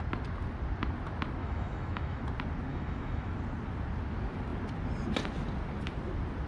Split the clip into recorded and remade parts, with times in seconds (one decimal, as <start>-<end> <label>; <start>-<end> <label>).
0.0-1.4 recorded; 1.4-2.2 remade; 2.2-2.7 recorded; 2.7-3.3 remade; 3.3-6.5 recorded